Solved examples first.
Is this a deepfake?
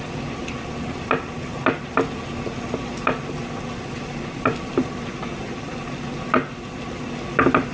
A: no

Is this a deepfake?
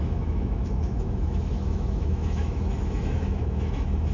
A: yes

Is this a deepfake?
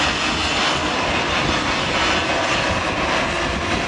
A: no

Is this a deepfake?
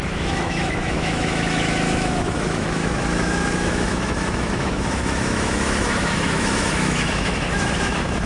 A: yes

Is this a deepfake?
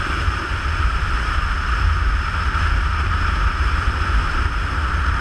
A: no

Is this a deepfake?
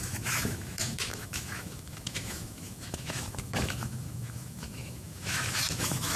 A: yes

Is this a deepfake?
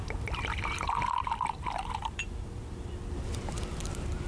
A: yes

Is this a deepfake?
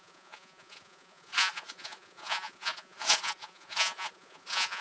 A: yes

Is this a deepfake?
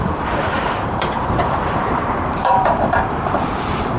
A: yes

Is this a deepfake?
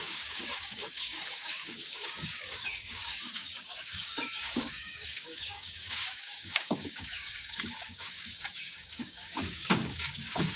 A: yes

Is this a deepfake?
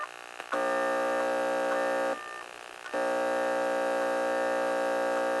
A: no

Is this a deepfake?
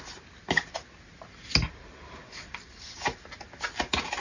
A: no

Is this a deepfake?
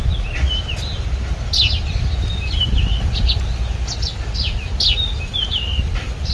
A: no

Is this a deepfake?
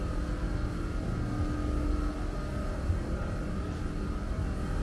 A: no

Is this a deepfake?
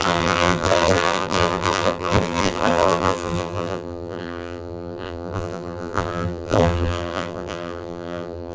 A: yes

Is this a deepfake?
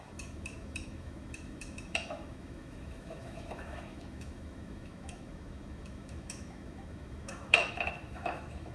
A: yes